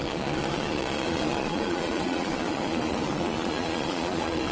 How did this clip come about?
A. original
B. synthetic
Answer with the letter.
B